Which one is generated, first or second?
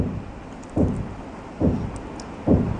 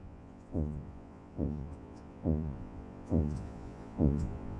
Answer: second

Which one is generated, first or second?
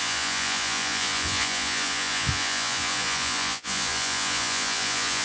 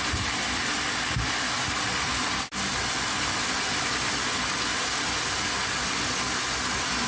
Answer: first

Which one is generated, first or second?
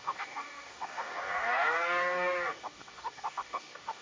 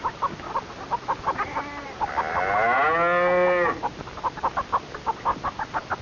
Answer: first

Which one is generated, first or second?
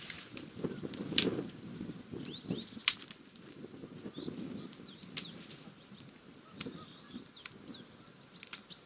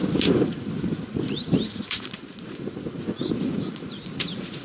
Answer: second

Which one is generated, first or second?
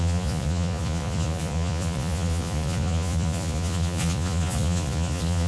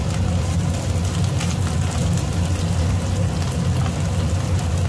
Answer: first